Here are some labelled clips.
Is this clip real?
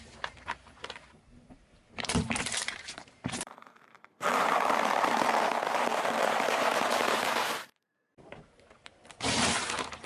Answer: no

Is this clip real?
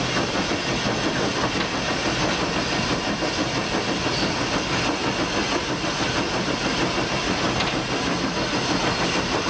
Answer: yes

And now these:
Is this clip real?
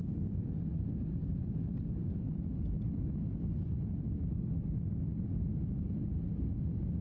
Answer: no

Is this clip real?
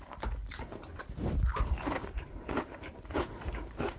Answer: no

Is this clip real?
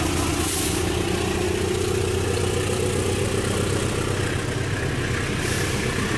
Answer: yes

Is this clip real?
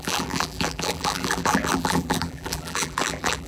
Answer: no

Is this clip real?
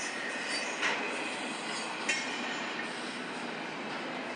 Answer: no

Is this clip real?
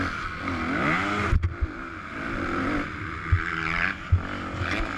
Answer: yes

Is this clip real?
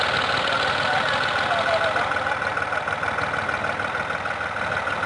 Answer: yes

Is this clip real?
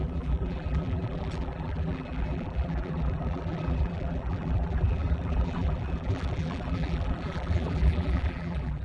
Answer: no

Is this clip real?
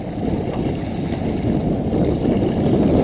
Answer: yes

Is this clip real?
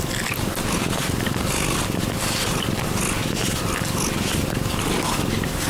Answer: yes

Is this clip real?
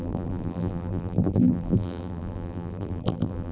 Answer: no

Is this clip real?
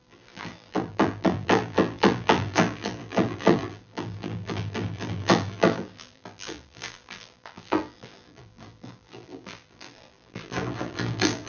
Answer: no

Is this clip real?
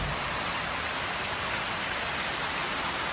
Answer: yes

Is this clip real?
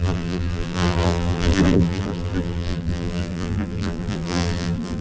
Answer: no